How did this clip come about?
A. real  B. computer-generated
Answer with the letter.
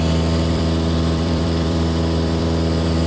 B